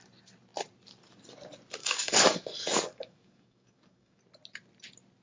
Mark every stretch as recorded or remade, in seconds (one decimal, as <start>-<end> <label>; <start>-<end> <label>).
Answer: 0.0-1.8 recorded; 1.8-4.2 remade; 4.2-5.2 recorded